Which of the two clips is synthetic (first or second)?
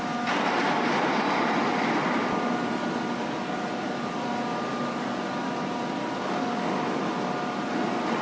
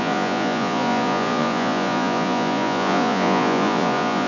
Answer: second